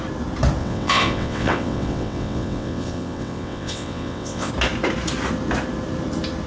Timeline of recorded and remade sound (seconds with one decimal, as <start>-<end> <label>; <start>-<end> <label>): 0.0-0.6 recorded; 0.6-4.5 remade; 4.5-6.5 recorded